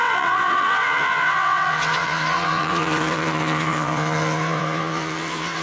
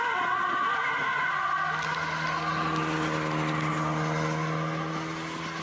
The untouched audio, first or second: second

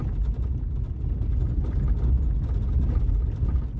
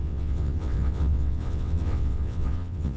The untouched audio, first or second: first